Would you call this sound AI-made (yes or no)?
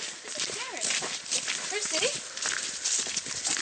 no